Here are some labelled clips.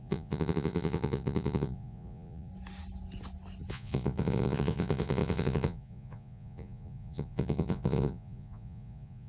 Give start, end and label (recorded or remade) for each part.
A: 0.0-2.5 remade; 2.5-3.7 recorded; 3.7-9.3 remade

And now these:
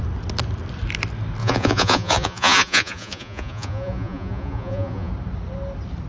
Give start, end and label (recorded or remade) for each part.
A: 0.0-1.4 recorded; 1.4-5.1 remade; 5.1-6.1 recorded

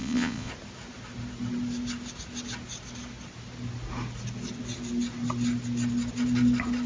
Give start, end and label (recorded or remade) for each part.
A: 0.0-0.5 remade; 0.5-6.9 recorded

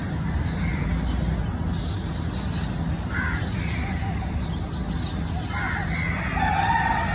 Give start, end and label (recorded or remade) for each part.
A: 0.0-7.1 recorded